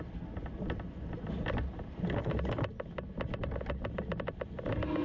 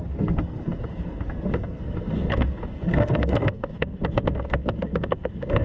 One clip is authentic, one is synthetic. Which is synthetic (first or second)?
second